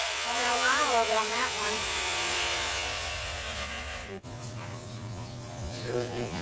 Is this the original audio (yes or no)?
no